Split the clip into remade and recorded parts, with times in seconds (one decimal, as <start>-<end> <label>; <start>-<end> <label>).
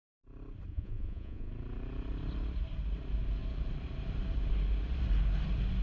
0.0-0.7 recorded; 0.7-1.5 remade; 1.5-5.8 recorded